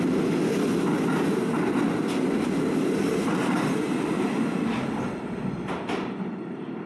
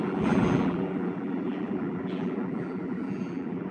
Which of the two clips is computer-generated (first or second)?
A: second